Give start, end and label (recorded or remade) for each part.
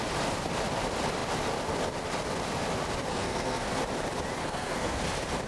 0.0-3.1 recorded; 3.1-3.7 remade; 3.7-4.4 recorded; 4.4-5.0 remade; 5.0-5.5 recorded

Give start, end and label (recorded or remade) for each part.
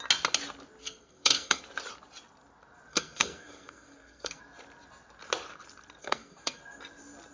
0.0-0.8 recorded; 0.8-1.6 remade; 1.6-2.9 recorded; 2.9-4.4 remade; 4.4-6.0 recorded; 6.0-6.6 remade; 6.6-7.3 recorded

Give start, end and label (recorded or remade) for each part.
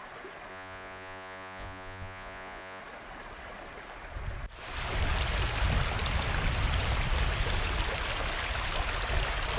0.0-0.5 recorded; 0.5-2.8 remade; 2.8-9.6 recorded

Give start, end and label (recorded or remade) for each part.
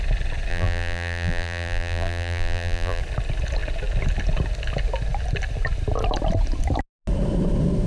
0.0-0.5 recorded; 0.5-3.0 remade; 3.0-7.9 recorded